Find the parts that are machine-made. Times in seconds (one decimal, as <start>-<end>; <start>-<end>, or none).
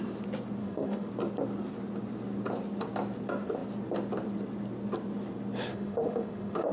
0.6-1.1; 5.7-6.7